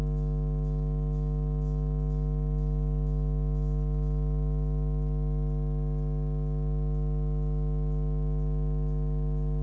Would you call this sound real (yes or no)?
yes